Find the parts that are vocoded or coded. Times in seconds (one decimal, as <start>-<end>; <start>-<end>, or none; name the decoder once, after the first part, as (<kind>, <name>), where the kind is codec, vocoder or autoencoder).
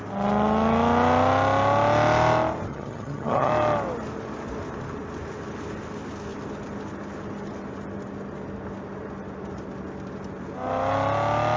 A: 2.7-3.5 (vocoder, HiFi-GAN)